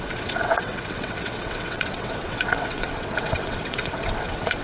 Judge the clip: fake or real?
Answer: fake